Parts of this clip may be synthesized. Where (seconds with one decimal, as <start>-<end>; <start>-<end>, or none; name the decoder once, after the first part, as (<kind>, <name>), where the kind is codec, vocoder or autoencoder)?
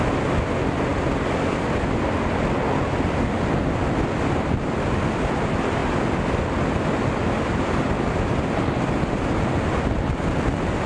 none